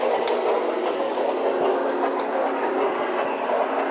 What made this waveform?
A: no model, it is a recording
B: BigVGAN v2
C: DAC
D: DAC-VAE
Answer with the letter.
A